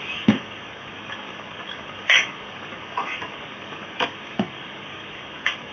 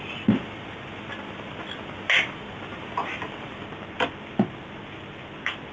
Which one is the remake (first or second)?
first